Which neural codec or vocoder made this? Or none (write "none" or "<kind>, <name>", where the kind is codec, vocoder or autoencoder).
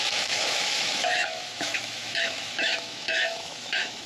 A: autoencoder, DAC-VAE